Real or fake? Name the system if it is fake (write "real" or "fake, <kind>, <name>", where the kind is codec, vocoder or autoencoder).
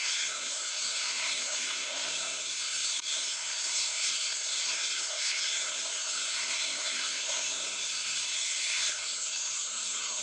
fake, codec, SNAC